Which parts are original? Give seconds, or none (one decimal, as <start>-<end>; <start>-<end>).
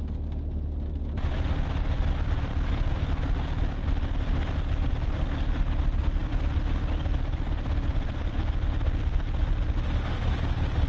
0.0-10.9